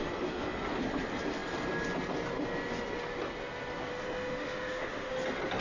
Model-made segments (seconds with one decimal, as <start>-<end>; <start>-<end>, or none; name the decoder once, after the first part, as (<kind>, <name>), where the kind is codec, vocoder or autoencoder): 3.9-5.1 (autoencoder, DAC-VAE)